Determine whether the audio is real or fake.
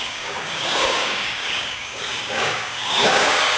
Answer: fake